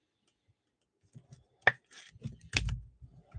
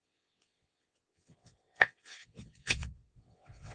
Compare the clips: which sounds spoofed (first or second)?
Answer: second